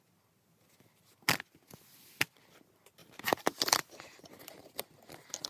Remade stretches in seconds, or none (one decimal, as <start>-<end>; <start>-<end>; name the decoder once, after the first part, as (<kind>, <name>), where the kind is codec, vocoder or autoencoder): 3.0-4.4 (vocoder, BigVGAN v2)